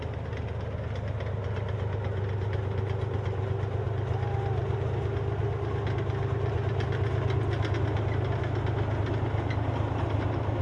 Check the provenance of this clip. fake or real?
real